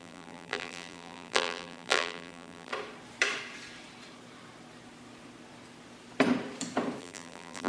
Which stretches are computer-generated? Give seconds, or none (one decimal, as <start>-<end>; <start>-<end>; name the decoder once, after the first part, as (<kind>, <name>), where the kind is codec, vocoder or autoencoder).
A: 0.0-2.7 (vocoder, BigVGAN v2); 7.0-7.7